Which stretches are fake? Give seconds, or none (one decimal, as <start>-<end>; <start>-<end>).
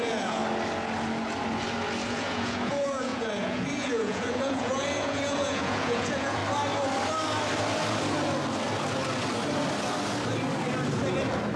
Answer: 0.0-0.4; 2.1-6.4